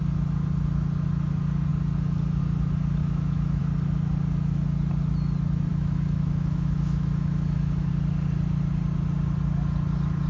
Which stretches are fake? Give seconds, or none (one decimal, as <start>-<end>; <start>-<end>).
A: 3.0-3.6; 5.7-7.9